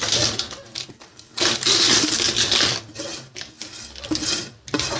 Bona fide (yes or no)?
yes